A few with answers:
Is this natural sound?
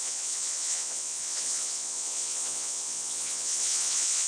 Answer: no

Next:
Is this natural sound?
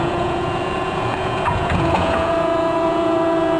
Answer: no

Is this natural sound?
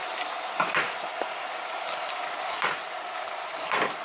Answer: yes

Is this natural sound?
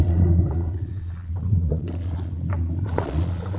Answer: no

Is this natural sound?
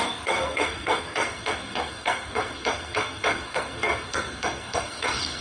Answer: no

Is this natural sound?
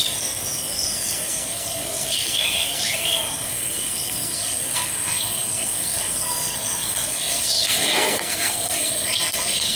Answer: no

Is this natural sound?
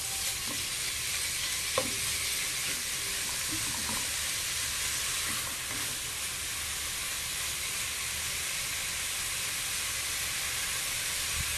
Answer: yes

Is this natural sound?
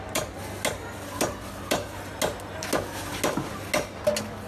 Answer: yes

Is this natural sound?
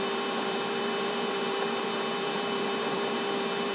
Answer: no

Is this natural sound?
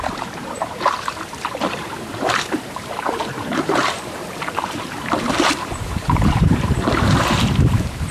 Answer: no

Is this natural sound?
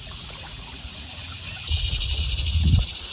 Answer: no